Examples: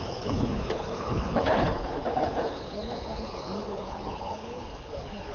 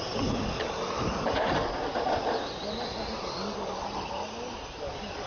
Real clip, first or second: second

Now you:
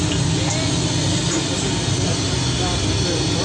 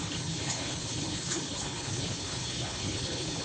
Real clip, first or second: first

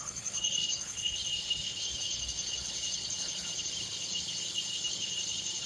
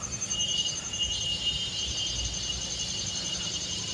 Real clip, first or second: second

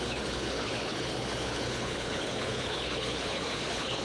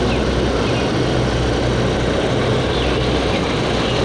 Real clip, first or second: second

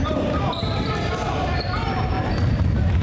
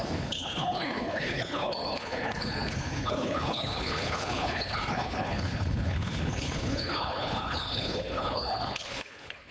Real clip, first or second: first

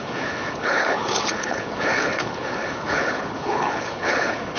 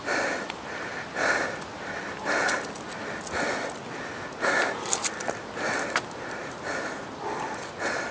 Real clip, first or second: second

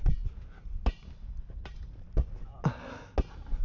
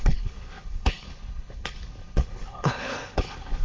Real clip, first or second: first